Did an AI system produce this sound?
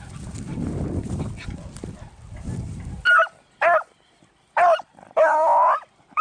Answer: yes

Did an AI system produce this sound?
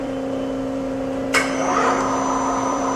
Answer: yes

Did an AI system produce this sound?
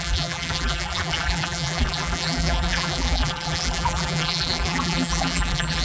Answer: yes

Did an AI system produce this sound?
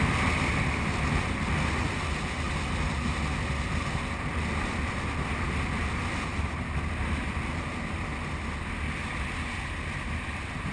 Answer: no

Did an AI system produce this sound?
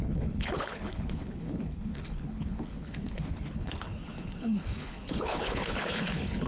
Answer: yes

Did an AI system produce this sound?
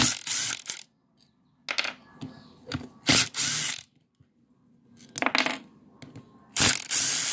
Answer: no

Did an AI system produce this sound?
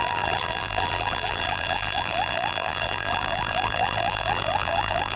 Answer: yes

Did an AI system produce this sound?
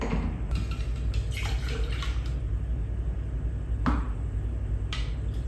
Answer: no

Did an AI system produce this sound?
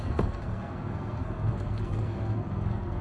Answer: yes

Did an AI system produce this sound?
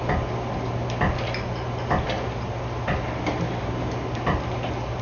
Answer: no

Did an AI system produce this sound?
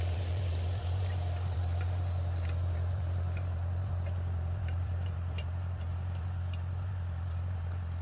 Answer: yes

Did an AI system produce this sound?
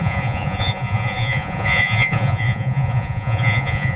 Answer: yes